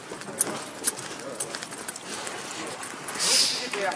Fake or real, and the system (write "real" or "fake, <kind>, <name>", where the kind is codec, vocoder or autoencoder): real